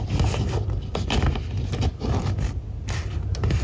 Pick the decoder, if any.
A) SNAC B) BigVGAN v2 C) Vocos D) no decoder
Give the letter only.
D